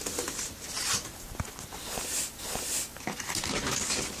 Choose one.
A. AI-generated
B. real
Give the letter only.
B